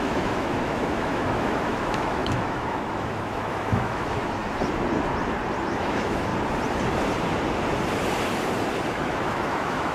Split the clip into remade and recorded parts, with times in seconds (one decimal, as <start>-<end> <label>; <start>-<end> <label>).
0.0-4.4 remade; 4.4-5.7 recorded; 5.7-6.3 remade; 6.3-8.9 recorded; 8.9-9.9 remade